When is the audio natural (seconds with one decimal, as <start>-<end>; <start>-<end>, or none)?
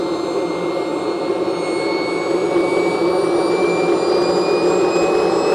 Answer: 0.0-5.5